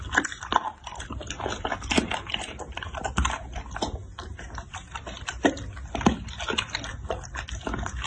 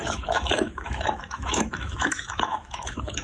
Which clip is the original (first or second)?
first